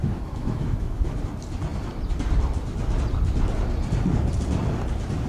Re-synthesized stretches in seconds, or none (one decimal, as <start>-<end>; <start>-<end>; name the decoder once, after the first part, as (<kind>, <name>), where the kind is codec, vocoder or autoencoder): 0.0-1.2 (autoencoder, DAC-VAE)